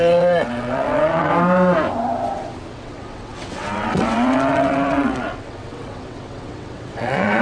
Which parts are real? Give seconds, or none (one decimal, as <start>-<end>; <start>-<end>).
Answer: 1.3-2.7